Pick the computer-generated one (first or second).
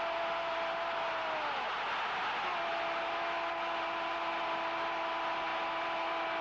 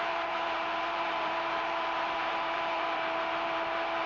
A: second